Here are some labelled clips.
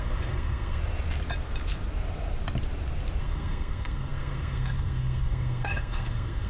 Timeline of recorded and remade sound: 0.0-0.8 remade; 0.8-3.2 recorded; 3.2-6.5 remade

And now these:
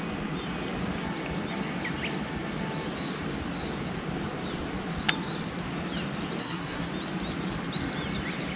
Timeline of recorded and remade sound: 0.0-6.4 recorded; 6.4-6.9 remade; 6.9-8.6 recorded

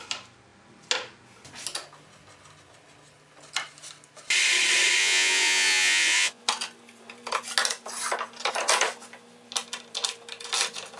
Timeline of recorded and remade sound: 0.0-5.0 recorded; 5.0-6.4 remade; 6.4-11.0 recorded

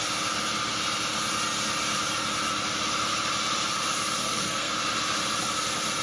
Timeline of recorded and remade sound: 0.0-4.2 recorded; 4.2-4.7 remade; 4.7-6.0 recorded

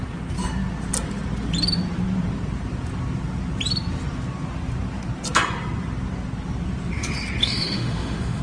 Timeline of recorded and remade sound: 0.0-7.4 recorded; 7.4-8.4 remade